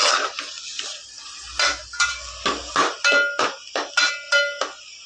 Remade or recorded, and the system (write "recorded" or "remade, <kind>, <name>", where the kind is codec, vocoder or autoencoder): recorded